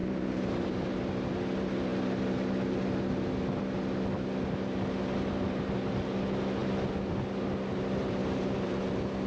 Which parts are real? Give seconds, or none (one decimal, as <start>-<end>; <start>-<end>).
0.9-8.2; 8.9-9.3